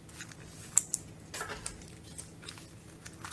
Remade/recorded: recorded